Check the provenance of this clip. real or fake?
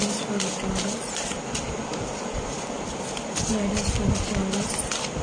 real